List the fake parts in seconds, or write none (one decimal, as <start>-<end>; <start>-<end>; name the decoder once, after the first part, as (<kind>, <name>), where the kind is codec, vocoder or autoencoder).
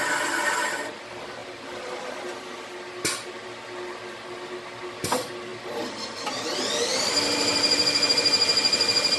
6.9-8.1 (vocoder, BigVGAN v2)